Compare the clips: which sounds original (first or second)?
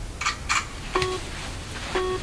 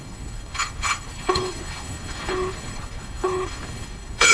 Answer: first